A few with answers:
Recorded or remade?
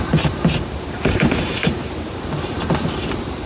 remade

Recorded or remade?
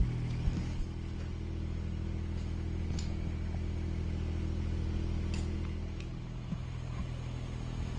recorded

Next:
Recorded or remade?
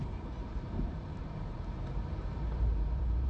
remade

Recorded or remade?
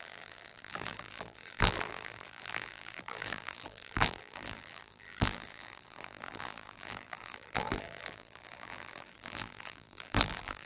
remade